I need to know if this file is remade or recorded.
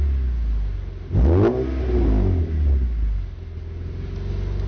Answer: recorded